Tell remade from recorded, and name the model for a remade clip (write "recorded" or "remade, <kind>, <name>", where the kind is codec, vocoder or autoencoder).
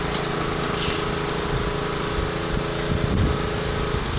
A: recorded